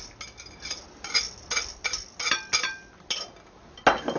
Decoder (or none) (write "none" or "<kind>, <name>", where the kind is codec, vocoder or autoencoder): none